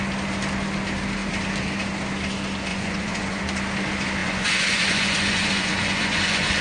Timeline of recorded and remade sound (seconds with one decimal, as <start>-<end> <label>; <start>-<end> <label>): 0.0-2.7 recorded; 2.7-3.4 remade; 3.4-4.2 recorded; 4.2-6.6 remade